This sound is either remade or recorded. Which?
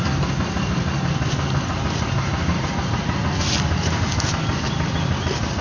recorded